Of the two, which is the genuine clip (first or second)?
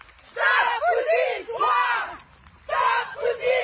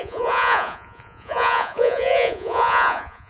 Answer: first